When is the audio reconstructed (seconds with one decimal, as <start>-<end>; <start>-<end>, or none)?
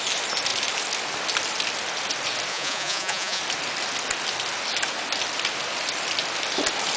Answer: 2.5-3.4